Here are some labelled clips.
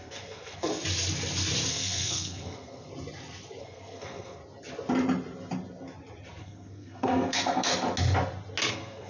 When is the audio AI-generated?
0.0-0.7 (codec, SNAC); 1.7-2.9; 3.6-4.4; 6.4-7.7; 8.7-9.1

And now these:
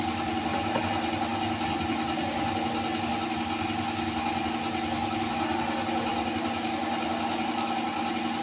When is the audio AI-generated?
none

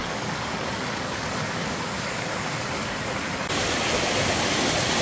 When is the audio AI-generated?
0.0-3.0 (codec, DAC)

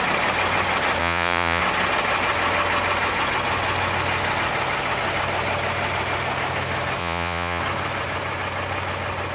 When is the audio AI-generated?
1.0-1.6 (vocoder, Vocos); 7.0-7.6

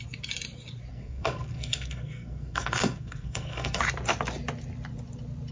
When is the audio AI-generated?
0.9-3.8 (codec, SNAC)

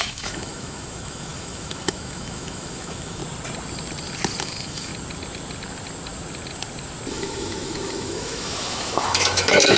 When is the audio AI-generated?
0.0-3.2 (autoencoder, DAC-VAE); 4.4-4.9; 7.1-9.8